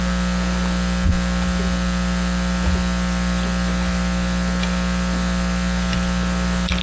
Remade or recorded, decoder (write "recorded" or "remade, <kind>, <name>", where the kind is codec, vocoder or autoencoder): recorded